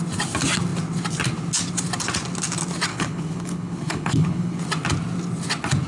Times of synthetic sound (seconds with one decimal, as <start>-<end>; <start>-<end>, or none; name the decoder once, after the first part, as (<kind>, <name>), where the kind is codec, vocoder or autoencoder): 2.9-4.6 (codec, HILCodec)